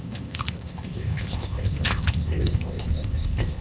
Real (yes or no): no